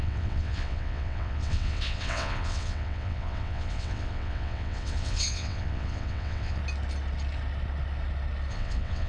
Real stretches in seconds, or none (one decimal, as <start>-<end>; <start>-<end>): 6.6-8.5